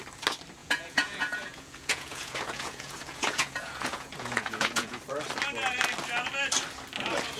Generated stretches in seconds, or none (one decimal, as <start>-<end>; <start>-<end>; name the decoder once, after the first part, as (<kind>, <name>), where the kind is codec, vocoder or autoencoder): 0.6-5.0 (vocoder, Vocos)